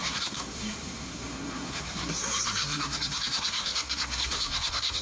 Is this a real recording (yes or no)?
no